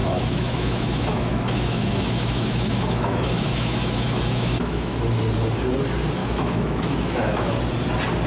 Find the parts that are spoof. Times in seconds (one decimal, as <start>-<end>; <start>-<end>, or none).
0.0-5.0; 6.2-7.6